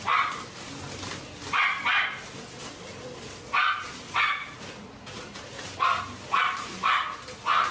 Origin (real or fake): real